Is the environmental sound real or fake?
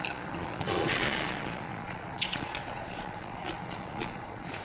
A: fake